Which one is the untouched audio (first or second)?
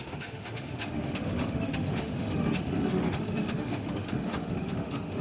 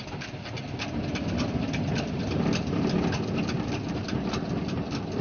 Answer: second